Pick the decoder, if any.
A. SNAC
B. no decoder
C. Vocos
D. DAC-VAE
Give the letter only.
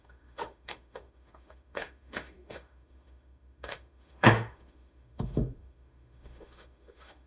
D